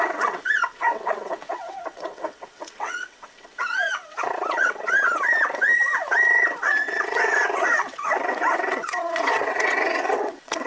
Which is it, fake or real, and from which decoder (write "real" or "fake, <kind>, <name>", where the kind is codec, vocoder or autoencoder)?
fake, vocoder, WaveNeXt